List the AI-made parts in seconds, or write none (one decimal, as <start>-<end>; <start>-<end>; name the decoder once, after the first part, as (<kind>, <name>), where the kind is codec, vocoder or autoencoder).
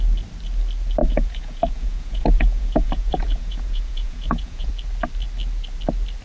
1.0-4.7 (vocoder, Vocos)